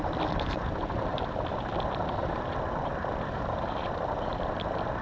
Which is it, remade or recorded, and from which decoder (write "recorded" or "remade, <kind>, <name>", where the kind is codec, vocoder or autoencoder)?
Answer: recorded